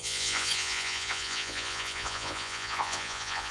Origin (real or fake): fake